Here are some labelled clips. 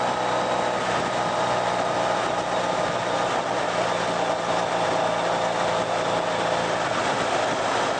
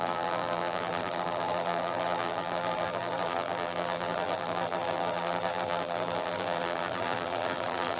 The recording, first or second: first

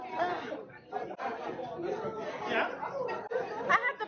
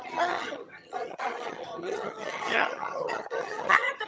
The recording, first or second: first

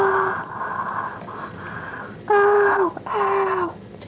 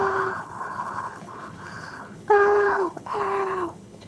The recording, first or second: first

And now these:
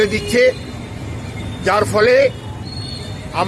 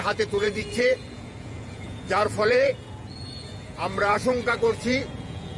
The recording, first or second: first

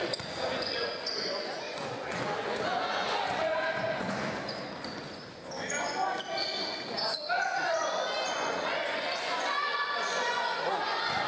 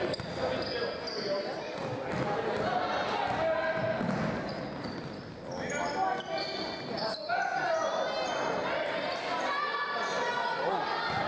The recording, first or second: second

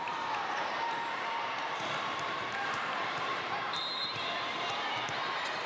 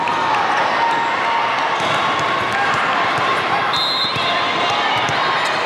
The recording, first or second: second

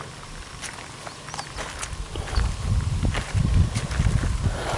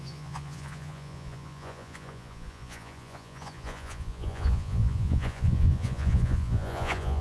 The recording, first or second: first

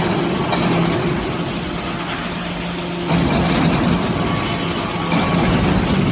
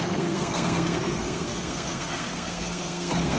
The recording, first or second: first